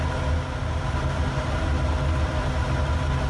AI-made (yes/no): no